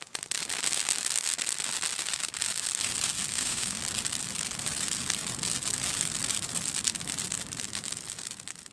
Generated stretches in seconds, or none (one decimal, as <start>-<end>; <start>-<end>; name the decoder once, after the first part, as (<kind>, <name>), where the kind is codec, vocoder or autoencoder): 3.3-3.8 (autoencoder, DAC-VAE)

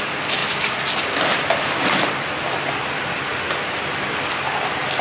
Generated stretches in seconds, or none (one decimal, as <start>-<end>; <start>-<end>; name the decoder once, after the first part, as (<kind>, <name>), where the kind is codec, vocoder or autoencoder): none

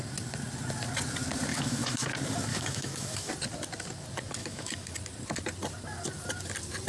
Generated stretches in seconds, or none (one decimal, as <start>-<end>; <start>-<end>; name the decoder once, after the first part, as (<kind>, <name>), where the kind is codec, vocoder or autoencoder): 1.5-2.1 (autoencoder, DAC-VAE); 2.5-3.3; 4.4-4.9

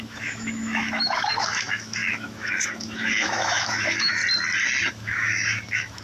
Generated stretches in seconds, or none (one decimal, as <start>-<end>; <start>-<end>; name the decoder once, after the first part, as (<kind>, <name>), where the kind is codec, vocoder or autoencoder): 0.0-4.2 (autoencoder, DAC-VAE); 4.9-6.0